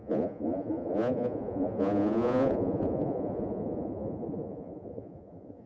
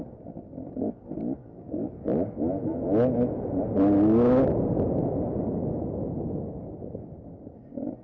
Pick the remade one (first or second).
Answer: first